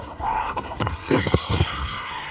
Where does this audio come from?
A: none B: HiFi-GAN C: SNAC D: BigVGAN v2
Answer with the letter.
C